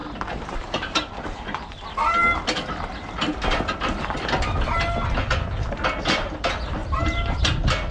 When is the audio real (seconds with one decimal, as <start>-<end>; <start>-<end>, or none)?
1.1-6.8; 7.4-7.9